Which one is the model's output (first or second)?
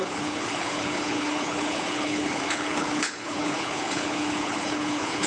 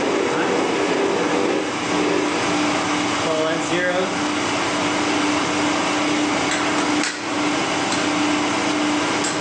first